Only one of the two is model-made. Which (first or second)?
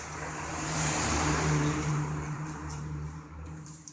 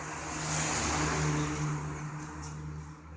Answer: first